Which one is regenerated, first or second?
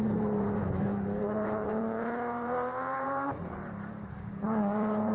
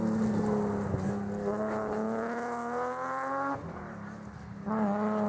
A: first